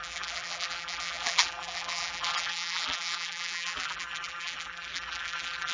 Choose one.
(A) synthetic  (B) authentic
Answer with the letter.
A